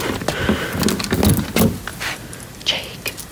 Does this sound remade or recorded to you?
recorded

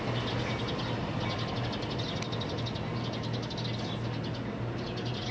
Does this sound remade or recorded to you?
recorded